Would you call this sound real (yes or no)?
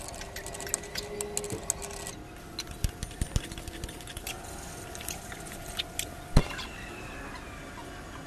yes